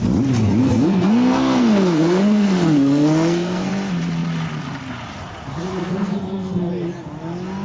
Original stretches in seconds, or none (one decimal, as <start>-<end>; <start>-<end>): 0.0-0.6; 3.7-5.8; 6.7-7.6